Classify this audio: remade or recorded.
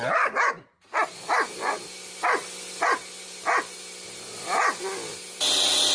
recorded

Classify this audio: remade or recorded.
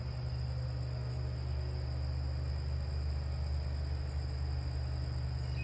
recorded